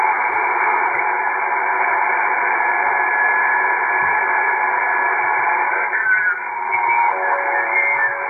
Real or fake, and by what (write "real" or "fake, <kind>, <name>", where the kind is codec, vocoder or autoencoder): real